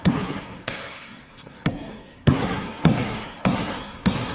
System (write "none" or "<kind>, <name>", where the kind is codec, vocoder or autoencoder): codec, SNAC